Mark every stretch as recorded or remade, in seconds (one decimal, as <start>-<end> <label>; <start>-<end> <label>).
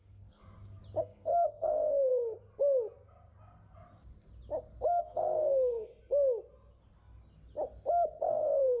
0.0-0.4 remade; 0.4-1.0 recorded; 1.0-2.1 remade; 2.1-5.0 recorded; 5.0-5.9 remade; 5.9-8.3 recorded; 8.3-8.8 remade